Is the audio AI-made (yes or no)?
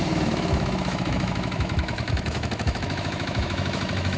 yes